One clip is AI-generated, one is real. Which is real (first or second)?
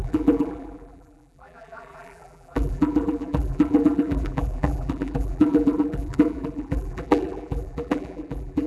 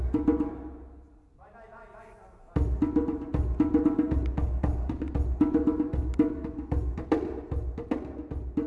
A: second